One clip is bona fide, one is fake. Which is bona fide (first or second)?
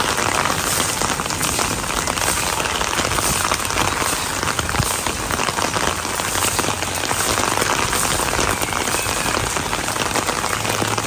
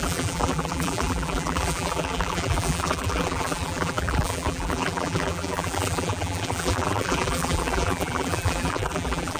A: first